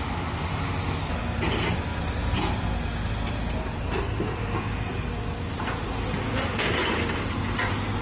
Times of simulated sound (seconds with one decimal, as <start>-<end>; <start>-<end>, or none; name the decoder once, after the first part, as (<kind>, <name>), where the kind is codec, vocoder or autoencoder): none